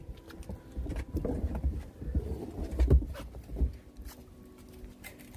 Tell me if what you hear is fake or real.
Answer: real